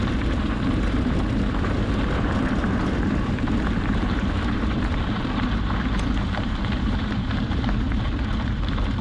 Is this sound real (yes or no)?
no